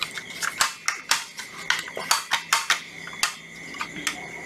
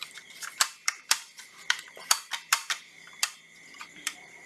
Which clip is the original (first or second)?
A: first